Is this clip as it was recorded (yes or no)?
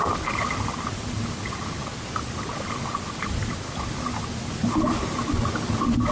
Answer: yes